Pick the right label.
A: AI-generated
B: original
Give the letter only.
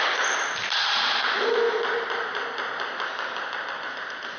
B